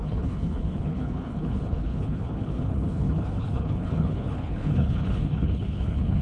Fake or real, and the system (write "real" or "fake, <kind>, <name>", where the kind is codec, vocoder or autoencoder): fake, codec, HILCodec